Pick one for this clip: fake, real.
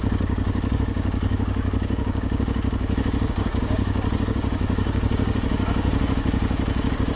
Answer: fake